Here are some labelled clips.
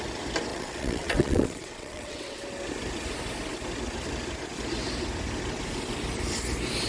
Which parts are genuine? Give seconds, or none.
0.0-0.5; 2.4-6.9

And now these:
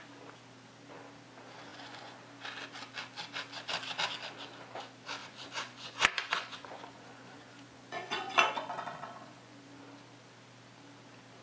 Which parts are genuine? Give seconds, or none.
0.0-1.7; 2.2-5.2; 9.8-11.4

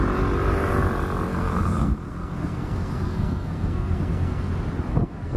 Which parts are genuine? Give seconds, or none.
0.0-1.3; 4.5-4.9

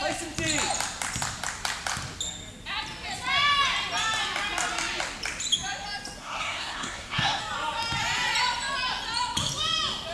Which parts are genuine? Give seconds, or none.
0.0-6.2; 7.4-10.1

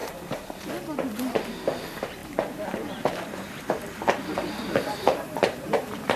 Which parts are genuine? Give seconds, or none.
0.7-2.2

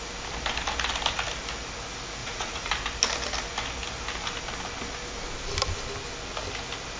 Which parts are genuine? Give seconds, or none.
0.0-2.2; 2.7-7.0

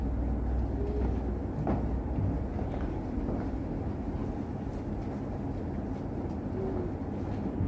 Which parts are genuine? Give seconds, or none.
0.0-7.7

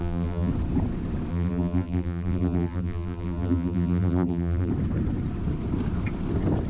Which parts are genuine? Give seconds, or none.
0.5-1.3; 4.7-6.7